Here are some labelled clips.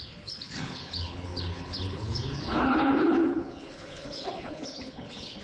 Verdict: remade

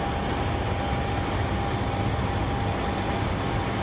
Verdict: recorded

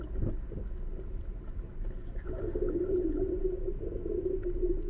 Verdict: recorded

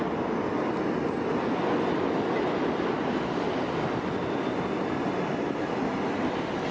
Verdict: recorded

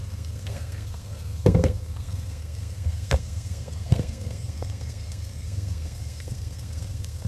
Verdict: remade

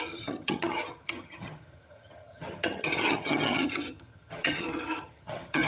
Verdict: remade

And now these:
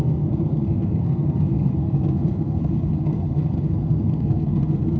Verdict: remade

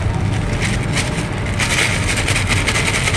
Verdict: recorded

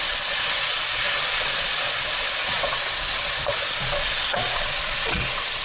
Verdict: remade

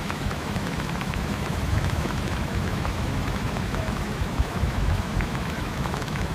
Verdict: remade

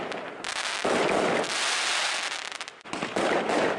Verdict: recorded